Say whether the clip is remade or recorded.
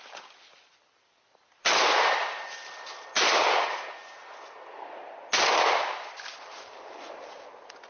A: recorded